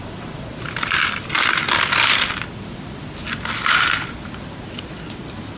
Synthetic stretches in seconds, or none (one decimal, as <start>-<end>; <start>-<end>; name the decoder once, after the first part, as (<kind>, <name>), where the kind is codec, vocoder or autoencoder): 0.5-1.3 (vocoder, BigVGAN v2)